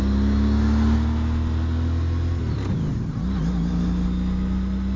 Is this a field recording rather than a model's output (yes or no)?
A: yes